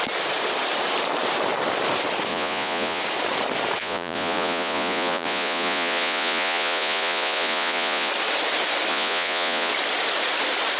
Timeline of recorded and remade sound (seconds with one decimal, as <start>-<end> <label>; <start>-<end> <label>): 0.0-2.3 recorded; 2.3-3.0 remade; 3.0-3.8 recorded; 3.8-8.1 remade; 8.1-8.9 recorded; 8.9-9.7 remade; 9.7-10.8 recorded